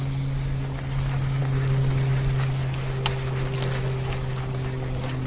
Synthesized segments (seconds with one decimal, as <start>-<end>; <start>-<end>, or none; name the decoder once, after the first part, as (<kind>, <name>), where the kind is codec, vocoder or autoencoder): none

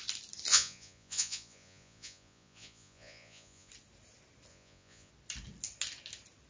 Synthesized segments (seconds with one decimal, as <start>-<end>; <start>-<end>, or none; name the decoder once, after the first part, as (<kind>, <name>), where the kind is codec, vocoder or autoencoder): 0.5-3.7 (vocoder, Vocos); 4.5-5.1